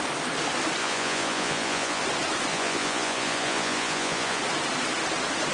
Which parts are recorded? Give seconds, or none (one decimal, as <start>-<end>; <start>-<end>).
0.0-0.8; 2.0-2.5; 4.4-5.5